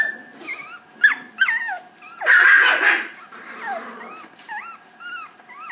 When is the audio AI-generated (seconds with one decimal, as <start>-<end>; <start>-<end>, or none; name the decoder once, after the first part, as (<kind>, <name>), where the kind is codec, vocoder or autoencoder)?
none